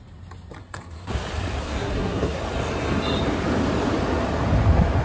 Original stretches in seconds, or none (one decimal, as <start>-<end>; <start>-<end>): 0.0-0.6; 1.1-1.6; 2.4-5.0